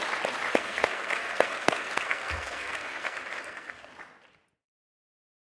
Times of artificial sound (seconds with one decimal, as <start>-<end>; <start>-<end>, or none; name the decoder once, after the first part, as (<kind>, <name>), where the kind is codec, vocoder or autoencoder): 0.5-3.9 (codec, SNAC)